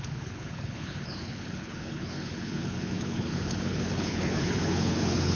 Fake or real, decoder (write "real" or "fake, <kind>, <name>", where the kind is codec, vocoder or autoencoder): fake, codec, HILCodec